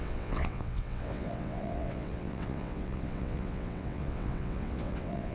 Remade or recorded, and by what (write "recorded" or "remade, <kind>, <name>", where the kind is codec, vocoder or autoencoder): remade, vocoder, WaveNeXt